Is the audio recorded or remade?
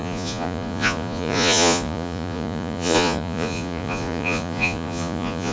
remade